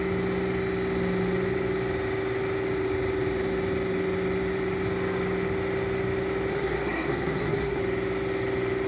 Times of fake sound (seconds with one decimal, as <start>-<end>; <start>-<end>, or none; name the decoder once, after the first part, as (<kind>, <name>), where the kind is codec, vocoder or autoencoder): 6.5-7.8 (codec, SNAC)